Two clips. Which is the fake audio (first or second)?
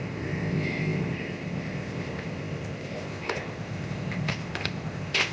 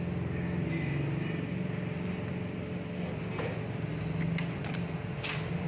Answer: first